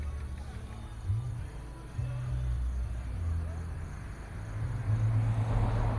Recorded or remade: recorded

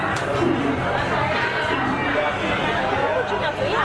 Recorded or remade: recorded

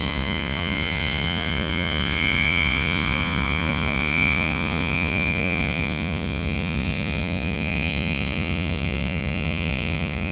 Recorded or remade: remade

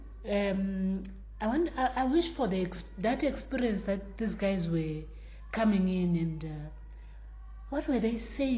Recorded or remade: recorded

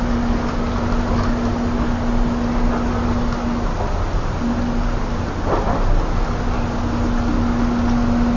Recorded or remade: recorded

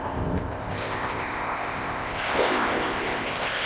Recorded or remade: remade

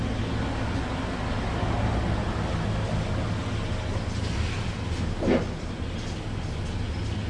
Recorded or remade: recorded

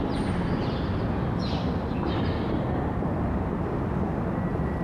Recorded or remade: recorded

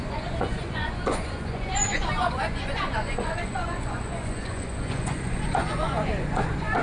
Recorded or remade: remade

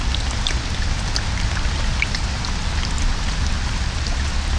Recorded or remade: recorded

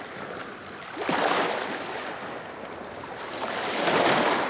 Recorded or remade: recorded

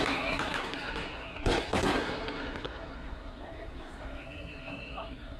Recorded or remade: remade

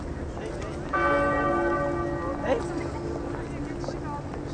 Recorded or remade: recorded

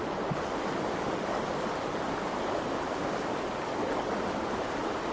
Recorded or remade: recorded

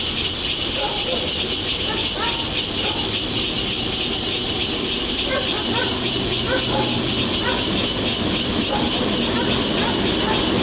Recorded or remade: recorded